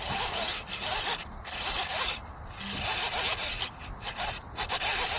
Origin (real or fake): real